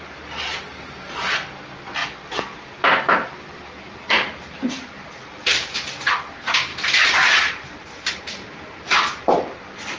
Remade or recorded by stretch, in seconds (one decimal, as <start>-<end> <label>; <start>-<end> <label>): 0.0-6.7 recorded; 6.7-10.0 remade